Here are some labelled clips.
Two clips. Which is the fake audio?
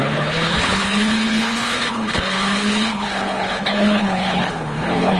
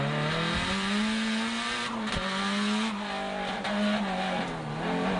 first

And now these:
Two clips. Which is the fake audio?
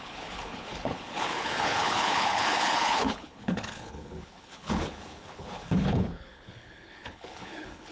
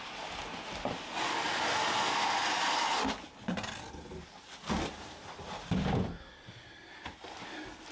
first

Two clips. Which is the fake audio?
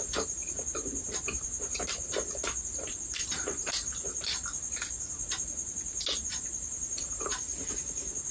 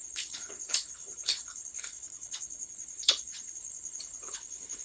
second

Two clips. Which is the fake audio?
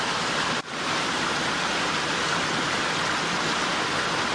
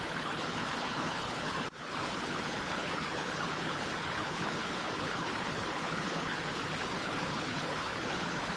second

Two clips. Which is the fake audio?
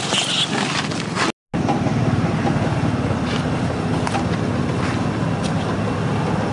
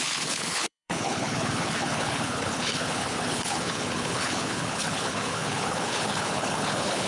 second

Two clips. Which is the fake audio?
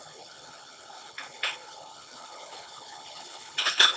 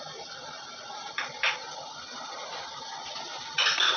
first